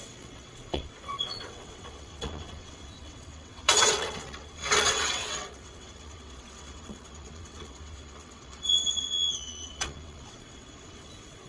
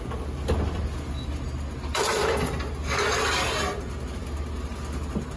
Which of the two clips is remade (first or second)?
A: first